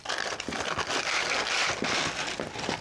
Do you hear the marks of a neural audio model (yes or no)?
no